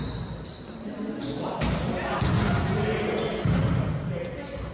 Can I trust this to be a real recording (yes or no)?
yes